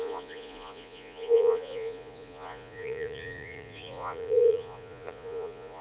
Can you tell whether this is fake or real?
fake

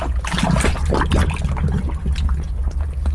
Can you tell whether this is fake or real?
real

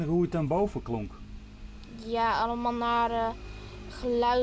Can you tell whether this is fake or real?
real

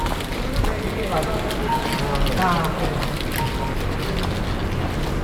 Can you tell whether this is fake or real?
real